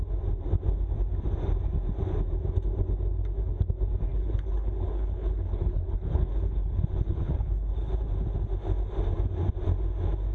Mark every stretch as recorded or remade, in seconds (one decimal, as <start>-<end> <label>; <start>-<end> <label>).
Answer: 0.0-4.1 recorded; 4.1-8.0 remade; 8.0-10.3 recorded